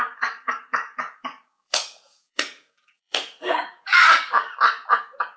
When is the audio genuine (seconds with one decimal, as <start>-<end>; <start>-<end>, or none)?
4.5-5.0